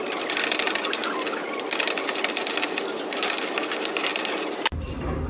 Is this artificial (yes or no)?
yes